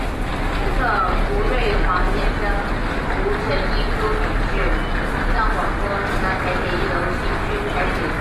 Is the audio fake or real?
real